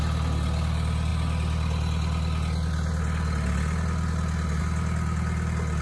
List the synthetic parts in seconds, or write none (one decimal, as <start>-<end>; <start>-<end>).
none